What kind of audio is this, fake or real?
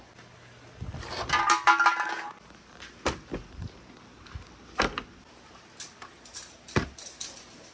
real